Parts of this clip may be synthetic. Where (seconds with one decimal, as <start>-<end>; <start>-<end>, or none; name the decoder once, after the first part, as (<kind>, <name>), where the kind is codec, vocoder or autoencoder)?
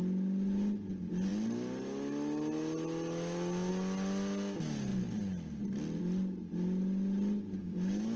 7.6-8.2 (codec, DAC)